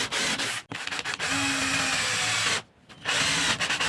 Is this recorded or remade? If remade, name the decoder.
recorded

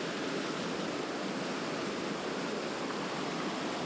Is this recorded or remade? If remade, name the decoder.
recorded